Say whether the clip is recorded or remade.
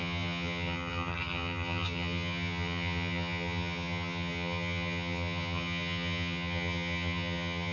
remade